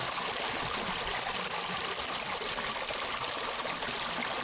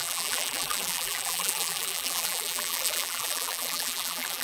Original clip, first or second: first